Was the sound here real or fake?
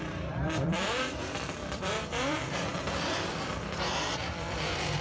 fake